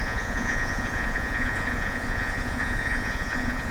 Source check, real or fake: fake